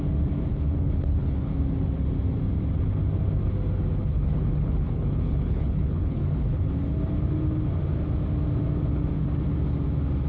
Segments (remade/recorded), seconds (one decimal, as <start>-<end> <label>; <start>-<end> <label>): 0.0-0.5 recorded; 0.5-1.5 remade; 1.5-4.0 recorded; 4.0-6.6 remade; 6.6-10.3 recorded